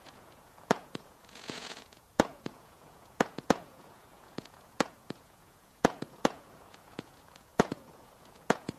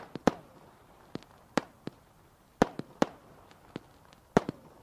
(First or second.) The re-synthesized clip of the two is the first